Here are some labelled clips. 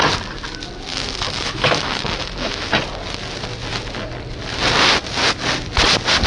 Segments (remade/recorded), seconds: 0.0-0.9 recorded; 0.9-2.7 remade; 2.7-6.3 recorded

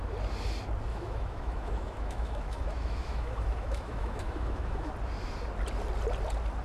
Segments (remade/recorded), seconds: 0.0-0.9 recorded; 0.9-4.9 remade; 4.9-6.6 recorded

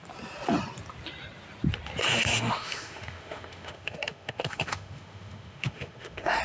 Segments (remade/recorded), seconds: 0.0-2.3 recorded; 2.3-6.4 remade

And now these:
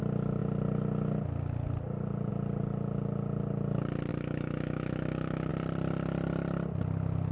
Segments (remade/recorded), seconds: 0.0-4.1 recorded; 4.1-5.5 remade; 5.5-7.3 recorded

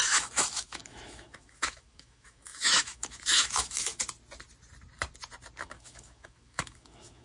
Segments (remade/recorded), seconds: 0.0-4.0 remade; 4.0-5.6 recorded; 5.6-7.2 remade

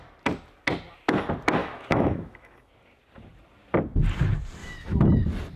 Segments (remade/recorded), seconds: 0.0-1.6 recorded; 1.6-2.7 remade; 2.7-4.6 recorded; 4.6-5.1 remade; 5.1-5.6 recorded

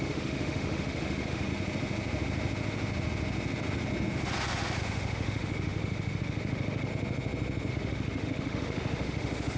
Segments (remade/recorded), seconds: 0.0-1.5 remade; 1.5-4.8 recorded; 4.8-6.9 remade; 6.9-7.7 recorded; 7.7-9.6 remade

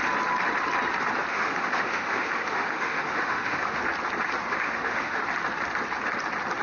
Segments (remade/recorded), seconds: 0.0-1.3 recorded; 1.3-3.8 remade; 3.8-4.5 recorded; 4.5-5.2 remade; 5.2-6.6 recorded